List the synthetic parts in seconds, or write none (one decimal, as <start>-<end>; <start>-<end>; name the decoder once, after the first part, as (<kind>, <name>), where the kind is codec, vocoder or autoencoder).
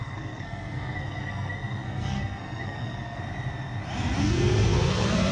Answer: 0.0-3.2 (codec, SNAC); 4.2-5.3